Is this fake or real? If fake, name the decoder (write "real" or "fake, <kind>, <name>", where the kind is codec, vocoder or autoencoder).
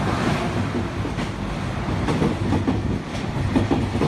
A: real